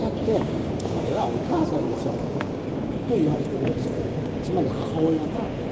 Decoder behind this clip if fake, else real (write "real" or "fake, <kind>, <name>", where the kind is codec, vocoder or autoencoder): fake, codec, DAC